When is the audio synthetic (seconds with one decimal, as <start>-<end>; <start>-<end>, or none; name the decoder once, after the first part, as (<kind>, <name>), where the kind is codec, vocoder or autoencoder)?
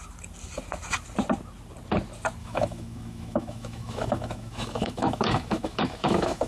2.4-6.5 (autoencoder, DAC-VAE)